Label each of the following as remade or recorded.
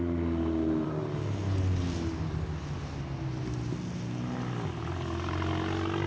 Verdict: recorded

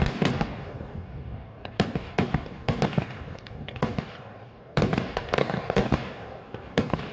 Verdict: remade